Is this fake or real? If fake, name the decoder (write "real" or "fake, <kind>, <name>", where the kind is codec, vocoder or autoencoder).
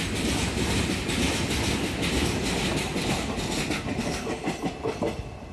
real